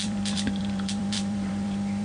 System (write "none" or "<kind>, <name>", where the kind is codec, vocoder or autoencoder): vocoder, BigVGAN v2